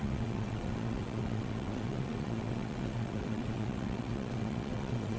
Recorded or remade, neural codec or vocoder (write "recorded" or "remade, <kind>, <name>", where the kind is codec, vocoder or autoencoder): remade, vocoder, WaveNeXt